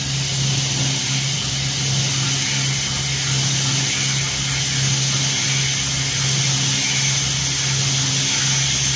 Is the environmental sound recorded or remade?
recorded